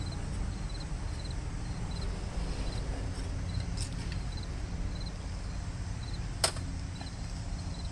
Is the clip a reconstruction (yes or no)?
no